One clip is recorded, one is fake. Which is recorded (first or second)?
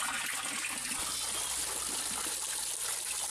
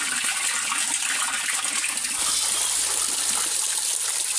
first